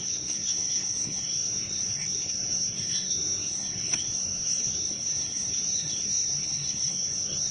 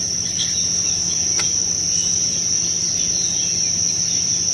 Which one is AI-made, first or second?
first